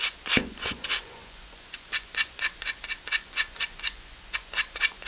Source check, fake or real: fake